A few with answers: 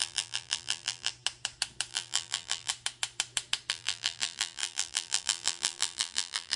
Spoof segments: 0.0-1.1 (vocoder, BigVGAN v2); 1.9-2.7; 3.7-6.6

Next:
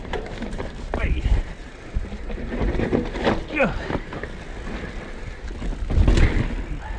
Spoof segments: 0.0-3.0 (vocoder, BigVGAN v2)

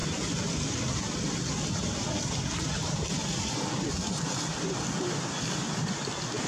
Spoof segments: none